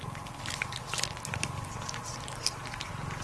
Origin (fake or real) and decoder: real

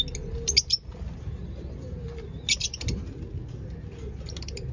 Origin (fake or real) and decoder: real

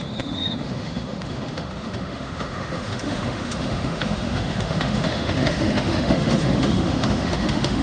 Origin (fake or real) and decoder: fake, autoencoder, DAC-VAE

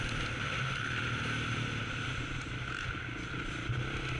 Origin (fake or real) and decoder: real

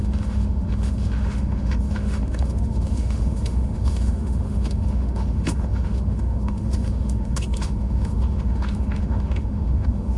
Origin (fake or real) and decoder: fake, autoencoder, DAC-VAE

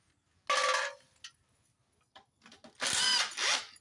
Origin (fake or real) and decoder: real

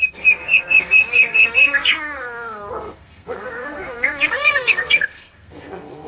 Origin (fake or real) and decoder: fake, codec, SNAC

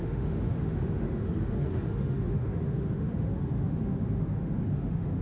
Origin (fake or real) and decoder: fake, autoencoder, DAC-VAE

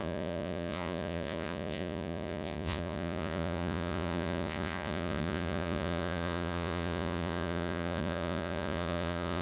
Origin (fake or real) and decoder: fake, vocoder, Vocos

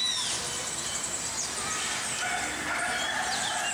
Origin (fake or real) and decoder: real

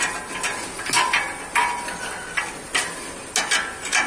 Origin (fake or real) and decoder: real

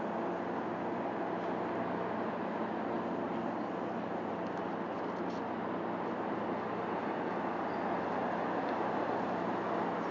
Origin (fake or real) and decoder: real